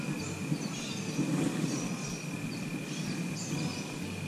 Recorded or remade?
recorded